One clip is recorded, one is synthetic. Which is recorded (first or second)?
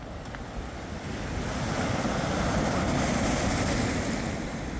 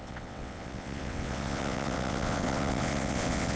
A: first